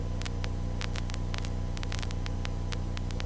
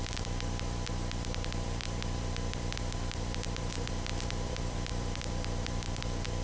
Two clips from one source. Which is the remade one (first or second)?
second